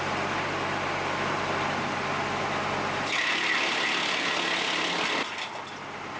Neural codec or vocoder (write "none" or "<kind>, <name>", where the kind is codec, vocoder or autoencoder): none